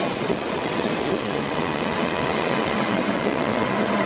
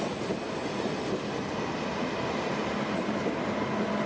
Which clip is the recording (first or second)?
second